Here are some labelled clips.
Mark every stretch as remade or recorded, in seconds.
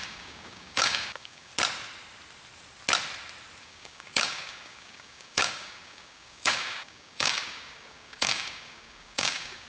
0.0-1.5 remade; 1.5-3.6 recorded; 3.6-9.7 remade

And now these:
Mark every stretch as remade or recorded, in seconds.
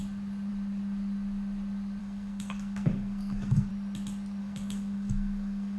0.0-2.0 recorded; 2.0-3.7 remade; 3.7-4.4 recorded; 4.4-5.8 remade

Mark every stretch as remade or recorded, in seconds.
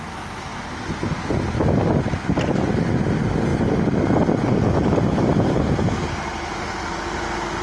0.0-7.6 recorded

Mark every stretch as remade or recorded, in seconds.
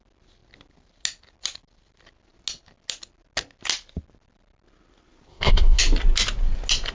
0.0-5.3 recorded; 5.3-5.8 remade; 5.8-6.9 recorded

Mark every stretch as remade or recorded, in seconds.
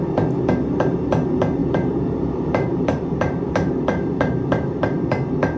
0.0-1.6 recorded; 1.6-5.0 remade; 5.0-5.6 recorded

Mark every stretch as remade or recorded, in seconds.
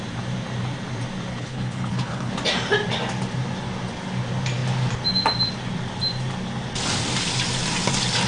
0.0-1.3 recorded; 1.3-2.3 remade; 2.3-8.3 recorded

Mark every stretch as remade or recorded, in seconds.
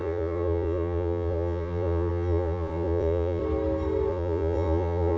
0.0-3.4 remade; 3.4-4.1 recorded; 4.1-5.2 remade